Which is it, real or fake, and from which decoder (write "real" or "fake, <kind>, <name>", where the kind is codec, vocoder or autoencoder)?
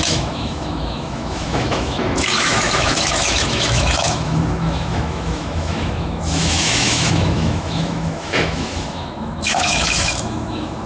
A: fake, autoencoder, DAC-VAE